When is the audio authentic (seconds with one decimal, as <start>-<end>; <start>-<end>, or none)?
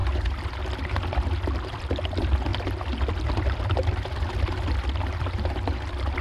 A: 0.0-0.6; 2.5-3.2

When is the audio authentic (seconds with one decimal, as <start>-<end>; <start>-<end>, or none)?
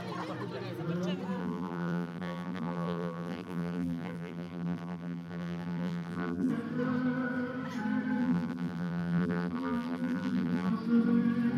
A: 0.0-1.4; 6.5-8.2; 10.7-11.6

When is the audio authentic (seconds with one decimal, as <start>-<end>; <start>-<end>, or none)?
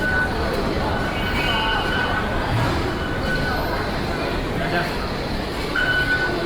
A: 0.0-6.5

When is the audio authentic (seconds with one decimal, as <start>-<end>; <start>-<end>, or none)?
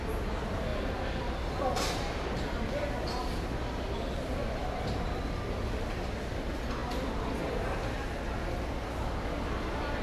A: 0.0-10.0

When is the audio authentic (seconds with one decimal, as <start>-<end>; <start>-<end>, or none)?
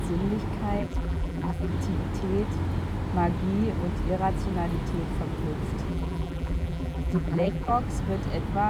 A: 0.0-0.8; 1.7-5.9; 7.7-8.7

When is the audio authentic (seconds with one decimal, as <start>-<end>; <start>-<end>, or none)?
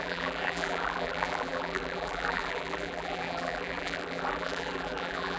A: none